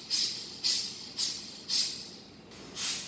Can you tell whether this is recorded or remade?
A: recorded